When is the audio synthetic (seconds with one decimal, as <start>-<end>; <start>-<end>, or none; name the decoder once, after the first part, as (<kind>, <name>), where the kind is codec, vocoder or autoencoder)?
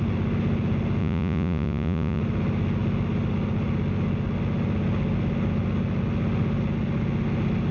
1.0-2.2 (vocoder, Vocos)